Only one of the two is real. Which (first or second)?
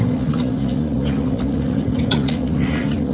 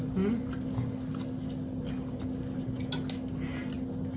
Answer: second